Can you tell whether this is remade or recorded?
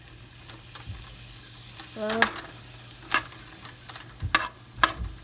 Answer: recorded